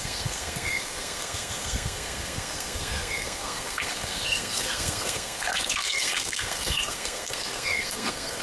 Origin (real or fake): fake